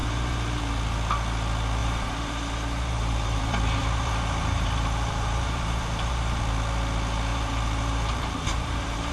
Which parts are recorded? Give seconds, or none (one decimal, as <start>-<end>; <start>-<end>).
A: 0.6-1.8; 6.4-7.3

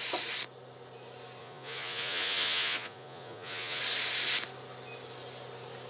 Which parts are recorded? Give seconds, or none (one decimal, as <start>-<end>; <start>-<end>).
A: 0.0-1.4; 3.8-5.9

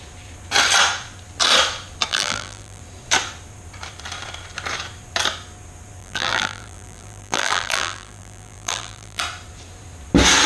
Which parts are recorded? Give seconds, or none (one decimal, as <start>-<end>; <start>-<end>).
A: 0.0-2.1; 2.8-6.0; 9.2-10.5

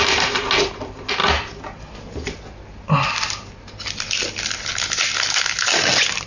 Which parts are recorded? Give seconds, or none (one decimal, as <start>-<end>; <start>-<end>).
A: 0.0-6.3

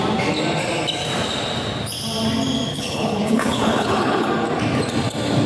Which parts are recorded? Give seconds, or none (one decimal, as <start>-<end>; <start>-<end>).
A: 0.0-2.7; 4.3-5.5